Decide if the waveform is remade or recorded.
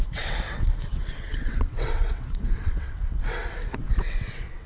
remade